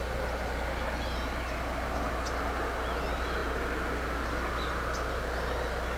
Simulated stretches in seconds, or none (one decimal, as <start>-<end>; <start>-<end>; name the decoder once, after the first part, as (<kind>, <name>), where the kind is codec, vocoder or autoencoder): none